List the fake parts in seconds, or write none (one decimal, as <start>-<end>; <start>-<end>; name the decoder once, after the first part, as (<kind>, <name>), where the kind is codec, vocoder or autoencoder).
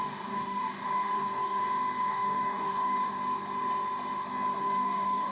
0.0-1.6 (codec, DAC); 2.1-3.1; 4.6-5.3